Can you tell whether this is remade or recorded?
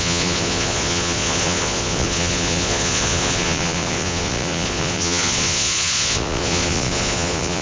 remade